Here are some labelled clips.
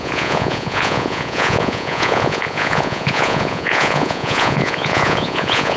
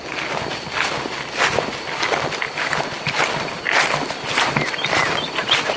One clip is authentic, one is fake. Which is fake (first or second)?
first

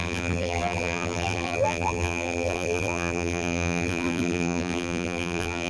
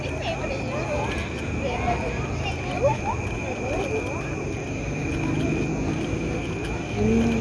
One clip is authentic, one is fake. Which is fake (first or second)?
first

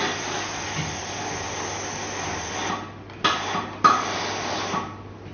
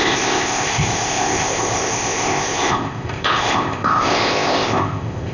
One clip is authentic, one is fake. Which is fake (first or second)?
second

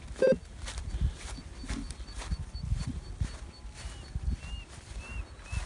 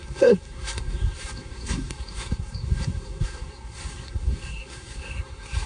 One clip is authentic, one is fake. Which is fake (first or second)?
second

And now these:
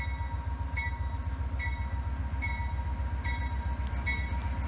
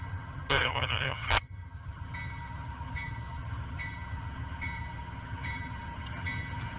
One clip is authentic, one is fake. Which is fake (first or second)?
second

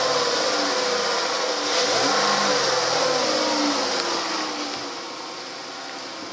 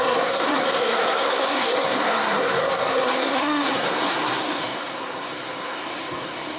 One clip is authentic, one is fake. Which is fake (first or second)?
second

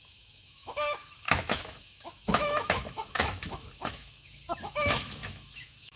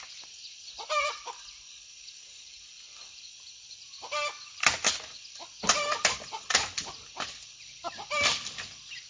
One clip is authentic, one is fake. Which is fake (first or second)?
first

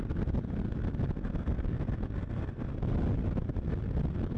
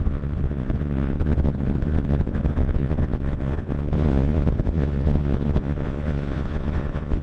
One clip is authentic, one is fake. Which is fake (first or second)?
second